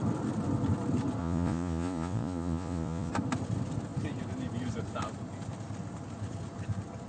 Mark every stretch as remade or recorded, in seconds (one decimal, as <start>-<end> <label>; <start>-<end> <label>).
0.0-1.2 recorded; 1.2-3.1 remade; 3.1-7.1 recorded